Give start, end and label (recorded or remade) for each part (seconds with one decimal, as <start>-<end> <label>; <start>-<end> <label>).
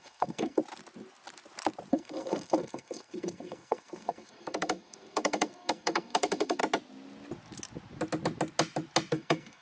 0.0-0.6 remade; 0.6-1.9 recorded; 1.9-6.6 remade; 6.6-9.1 recorded; 9.1-9.6 remade